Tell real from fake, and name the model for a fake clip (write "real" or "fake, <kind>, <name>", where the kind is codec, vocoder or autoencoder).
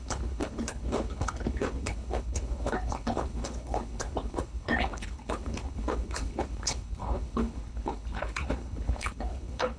fake, codec, HILCodec